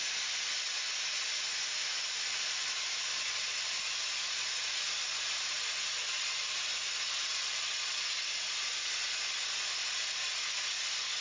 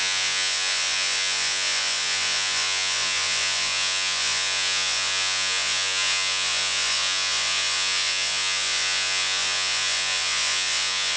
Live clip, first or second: first